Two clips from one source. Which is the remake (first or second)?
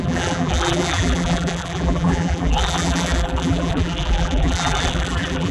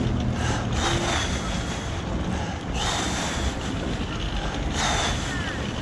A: first